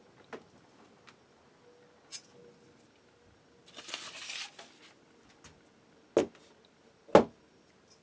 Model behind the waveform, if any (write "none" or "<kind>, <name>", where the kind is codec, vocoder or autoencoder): none